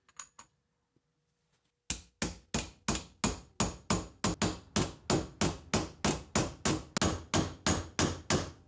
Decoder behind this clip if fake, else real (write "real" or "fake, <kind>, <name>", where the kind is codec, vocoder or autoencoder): real